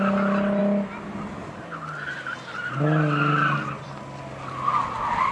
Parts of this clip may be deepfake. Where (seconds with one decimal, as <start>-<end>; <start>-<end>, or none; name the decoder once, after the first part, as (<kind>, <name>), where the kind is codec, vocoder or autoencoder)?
none